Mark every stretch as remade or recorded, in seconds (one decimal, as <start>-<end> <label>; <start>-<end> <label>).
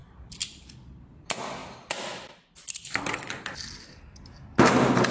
0.0-5.1 recorded